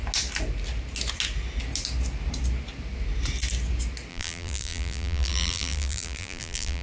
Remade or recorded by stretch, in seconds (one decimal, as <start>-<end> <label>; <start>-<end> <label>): 0.0-4.1 recorded; 4.1-6.8 remade